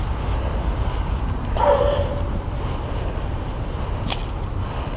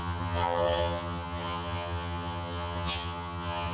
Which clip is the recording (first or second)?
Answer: first